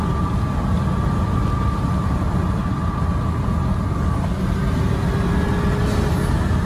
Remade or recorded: recorded